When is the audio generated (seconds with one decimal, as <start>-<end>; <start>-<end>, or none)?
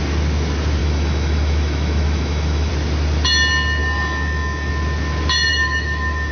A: 0.8-2.7; 3.8-4.7; 5.5-6.3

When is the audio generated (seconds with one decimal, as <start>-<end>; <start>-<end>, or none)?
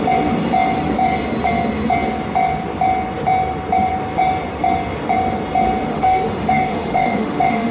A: 5.9-7.7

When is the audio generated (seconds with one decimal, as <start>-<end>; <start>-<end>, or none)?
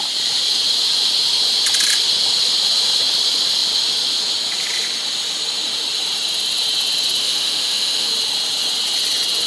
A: 7.2-8.1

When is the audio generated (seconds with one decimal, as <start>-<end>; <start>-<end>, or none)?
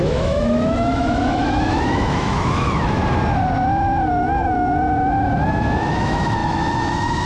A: 0.0-3.0; 5.5-7.3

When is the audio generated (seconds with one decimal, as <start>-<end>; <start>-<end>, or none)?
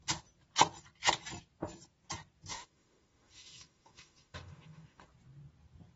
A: 2.5-5.1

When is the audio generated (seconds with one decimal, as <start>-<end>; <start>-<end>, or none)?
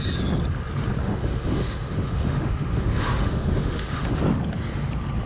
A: 1.0-4.2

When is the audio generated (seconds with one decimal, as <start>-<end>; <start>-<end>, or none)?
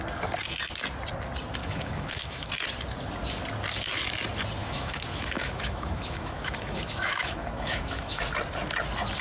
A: 1.6-2.5; 4.6-8.2